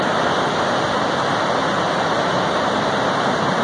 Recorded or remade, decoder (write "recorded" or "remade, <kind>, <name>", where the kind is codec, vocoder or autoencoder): recorded